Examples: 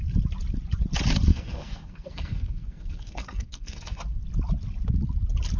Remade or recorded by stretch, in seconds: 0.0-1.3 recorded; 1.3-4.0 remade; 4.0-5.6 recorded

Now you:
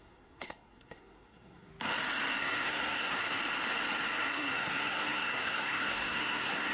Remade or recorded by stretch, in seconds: 0.0-1.7 remade; 1.7-2.4 recorded; 2.4-3.4 remade; 3.4-4.2 recorded; 4.2-6.7 remade

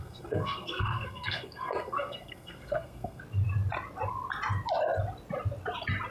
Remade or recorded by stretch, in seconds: 0.0-3.2 remade; 3.2-6.1 recorded